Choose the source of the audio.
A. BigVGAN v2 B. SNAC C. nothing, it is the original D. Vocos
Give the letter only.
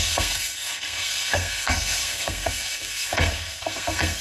B